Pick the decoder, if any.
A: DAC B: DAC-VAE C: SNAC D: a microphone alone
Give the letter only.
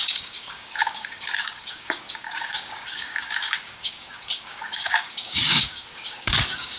A